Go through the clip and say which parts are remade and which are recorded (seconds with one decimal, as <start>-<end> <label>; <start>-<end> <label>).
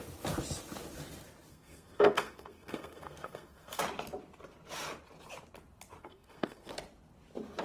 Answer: 0.0-1.5 recorded; 1.5-3.8 remade; 3.8-6.0 recorded; 6.0-6.7 remade; 6.7-7.6 recorded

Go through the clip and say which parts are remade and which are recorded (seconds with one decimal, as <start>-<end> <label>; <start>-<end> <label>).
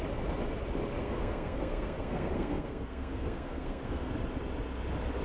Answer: 0.0-1.0 recorded; 1.0-4.1 remade; 4.1-5.2 recorded